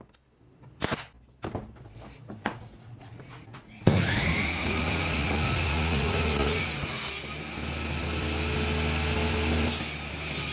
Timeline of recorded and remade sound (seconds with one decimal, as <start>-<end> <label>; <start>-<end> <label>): 0.0-2.5 recorded; 2.5-7.0 remade; 7.0-10.5 recorded